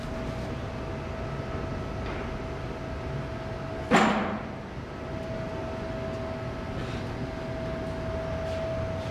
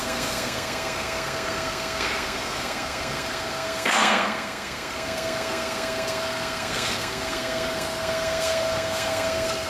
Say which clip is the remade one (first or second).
second